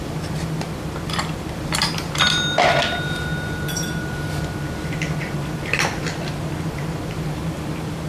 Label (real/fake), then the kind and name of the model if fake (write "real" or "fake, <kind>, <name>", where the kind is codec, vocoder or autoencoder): fake, vocoder, BigVGAN v2